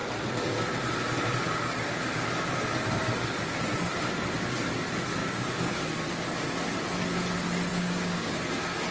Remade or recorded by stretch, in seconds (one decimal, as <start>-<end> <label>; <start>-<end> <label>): 0.0-5.2 recorded; 5.2-5.8 remade; 5.8-7.7 recorded; 7.7-8.3 remade; 8.3-8.9 recorded